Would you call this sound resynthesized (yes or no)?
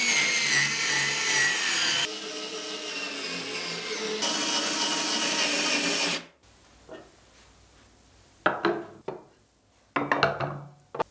no